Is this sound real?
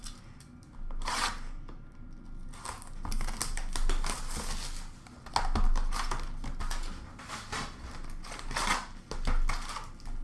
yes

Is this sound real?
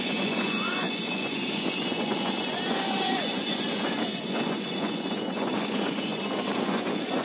no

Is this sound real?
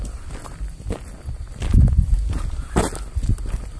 yes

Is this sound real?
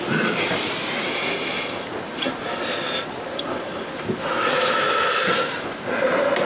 yes